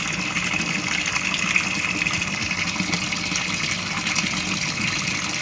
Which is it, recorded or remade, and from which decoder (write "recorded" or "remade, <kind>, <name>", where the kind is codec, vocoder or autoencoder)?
recorded